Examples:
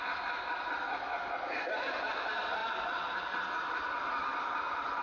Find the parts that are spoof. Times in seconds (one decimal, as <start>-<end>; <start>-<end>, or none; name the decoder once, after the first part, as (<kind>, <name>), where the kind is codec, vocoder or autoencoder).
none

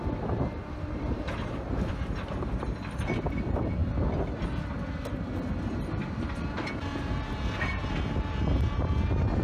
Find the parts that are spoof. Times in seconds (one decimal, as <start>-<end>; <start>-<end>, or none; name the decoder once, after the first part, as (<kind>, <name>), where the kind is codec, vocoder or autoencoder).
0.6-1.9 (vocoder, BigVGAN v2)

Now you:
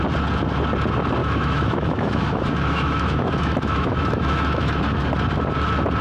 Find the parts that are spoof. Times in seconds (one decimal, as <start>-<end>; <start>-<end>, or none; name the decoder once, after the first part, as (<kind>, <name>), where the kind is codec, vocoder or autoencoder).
1.2-4.8 (autoencoder, DAC-VAE)